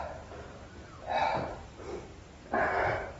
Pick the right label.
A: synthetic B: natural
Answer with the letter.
B